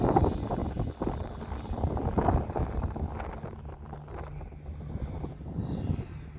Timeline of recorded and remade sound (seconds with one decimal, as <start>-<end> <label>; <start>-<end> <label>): 0.0-6.4 recorded